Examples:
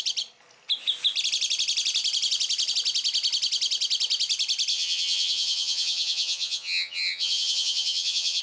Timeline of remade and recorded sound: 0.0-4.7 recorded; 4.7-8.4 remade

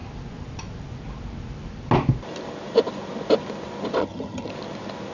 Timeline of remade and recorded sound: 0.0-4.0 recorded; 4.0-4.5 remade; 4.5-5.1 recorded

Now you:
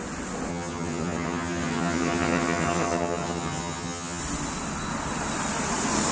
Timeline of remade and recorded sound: 0.0-0.5 recorded; 0.5-4.2 remade; 4.2-6.1 recorded